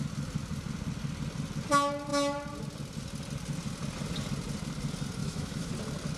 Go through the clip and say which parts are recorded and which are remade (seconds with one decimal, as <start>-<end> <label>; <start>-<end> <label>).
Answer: 0.0-5.2 recorded; 5.2-5.7 remade; 5.7-6.2 recorded